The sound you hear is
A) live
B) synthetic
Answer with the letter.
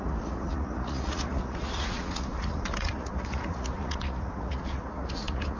B